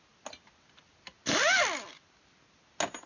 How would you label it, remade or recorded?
recorded